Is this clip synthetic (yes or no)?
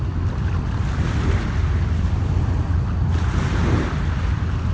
no